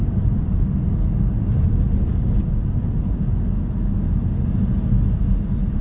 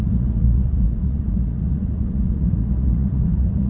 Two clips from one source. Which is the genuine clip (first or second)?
first